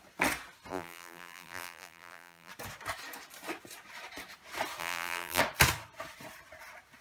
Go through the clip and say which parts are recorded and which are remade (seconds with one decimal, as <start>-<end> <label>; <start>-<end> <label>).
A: 0.0-0.7 recorded; 0.7-2.5 remade; 2.5-4.8 recorded; 4.8-5.4 remade; 5.4-7.0 recorded